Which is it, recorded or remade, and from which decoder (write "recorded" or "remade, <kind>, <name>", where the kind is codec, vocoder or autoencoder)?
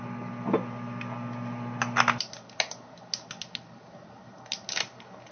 recorded